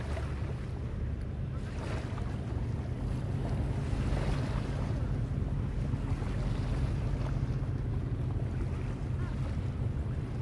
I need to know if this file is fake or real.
real